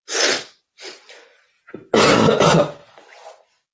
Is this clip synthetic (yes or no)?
no